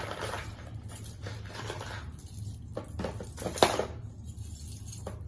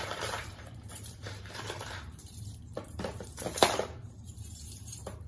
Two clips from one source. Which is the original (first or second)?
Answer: first